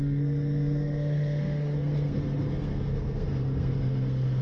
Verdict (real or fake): fake